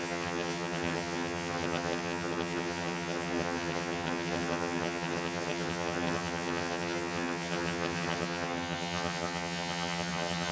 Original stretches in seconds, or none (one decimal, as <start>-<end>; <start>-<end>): none